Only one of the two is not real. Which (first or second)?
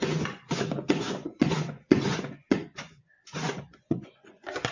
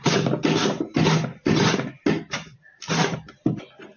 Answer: first